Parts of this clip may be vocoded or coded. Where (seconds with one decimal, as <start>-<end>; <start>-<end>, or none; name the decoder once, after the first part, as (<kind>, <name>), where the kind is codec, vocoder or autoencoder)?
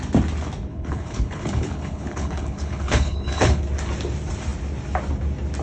0.7-3.6 (codec, HILCodec)